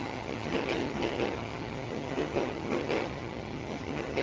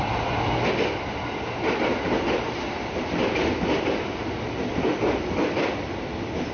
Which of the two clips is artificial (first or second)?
first